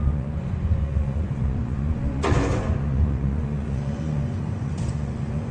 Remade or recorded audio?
remade